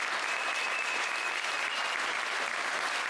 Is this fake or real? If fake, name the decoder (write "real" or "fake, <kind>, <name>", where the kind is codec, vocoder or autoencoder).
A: real